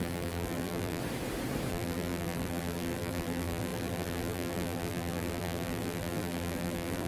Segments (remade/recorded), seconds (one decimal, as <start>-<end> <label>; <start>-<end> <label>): 0.0-1.0 remade; 1.0-1.7 recorded; 1.7-7.1 remade